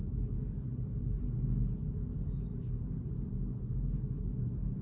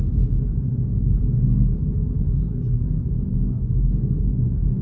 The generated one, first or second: second